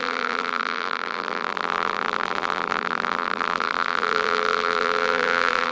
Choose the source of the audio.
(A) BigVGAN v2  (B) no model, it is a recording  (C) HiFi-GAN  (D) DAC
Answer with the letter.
A